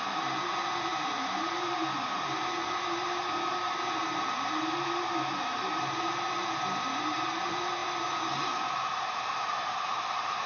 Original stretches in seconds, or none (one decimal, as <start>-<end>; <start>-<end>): none